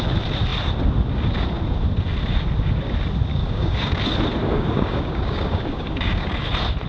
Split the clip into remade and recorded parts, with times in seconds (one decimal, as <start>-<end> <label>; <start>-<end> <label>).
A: 0.0-3.3 recorded; 3.3-4.0 remade; 4.0-4.4 recorded; 4.4-6.3 remade; 6.3-6.9 recorded